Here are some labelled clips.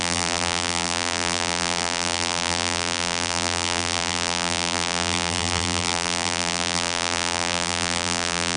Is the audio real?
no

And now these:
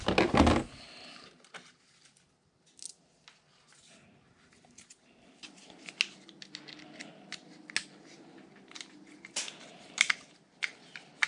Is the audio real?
yes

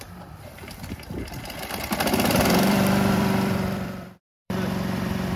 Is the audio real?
no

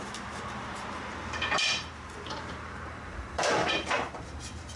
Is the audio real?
no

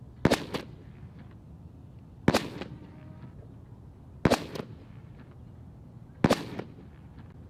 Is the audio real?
yes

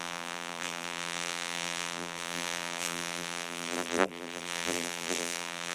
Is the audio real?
no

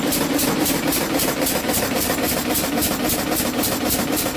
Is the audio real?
no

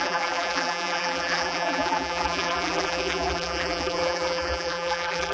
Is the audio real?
no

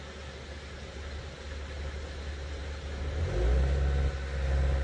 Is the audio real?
yes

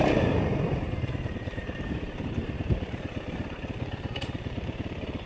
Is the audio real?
no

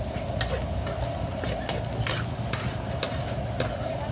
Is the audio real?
yes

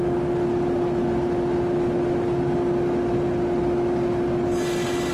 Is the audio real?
yes